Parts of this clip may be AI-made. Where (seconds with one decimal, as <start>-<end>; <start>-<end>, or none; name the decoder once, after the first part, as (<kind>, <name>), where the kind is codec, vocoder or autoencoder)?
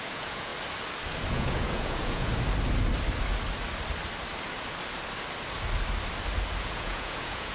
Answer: 0.0-0.5 (vocoder, Vocos); 1.3-2.3; 6.6-7.5